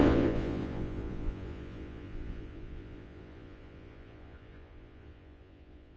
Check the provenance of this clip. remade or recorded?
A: remade